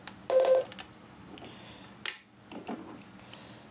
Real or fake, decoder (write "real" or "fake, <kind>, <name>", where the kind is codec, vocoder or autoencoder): real